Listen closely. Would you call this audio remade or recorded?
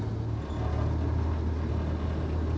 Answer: recorded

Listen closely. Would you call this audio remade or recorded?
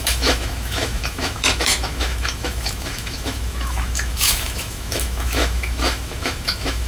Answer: remade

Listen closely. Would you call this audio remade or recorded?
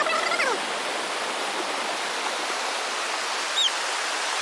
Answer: recorded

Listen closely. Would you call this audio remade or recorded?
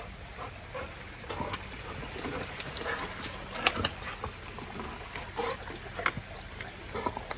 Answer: recorded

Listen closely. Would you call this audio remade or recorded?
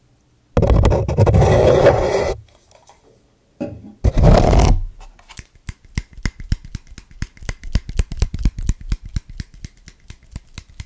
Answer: recorded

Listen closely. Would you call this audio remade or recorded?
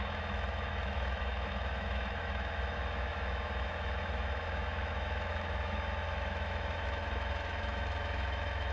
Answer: remade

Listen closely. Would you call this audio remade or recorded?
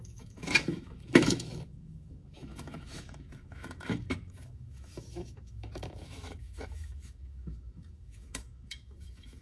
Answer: remade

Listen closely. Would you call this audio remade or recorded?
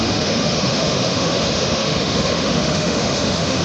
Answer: remade